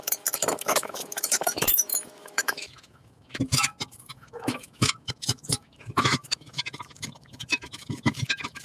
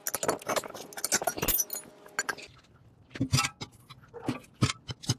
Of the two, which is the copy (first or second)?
first